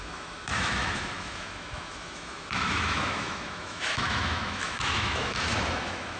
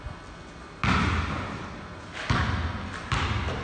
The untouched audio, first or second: second